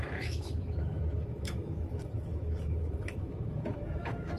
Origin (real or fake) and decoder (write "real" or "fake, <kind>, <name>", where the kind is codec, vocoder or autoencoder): fake, autoencoder, DAC-VAE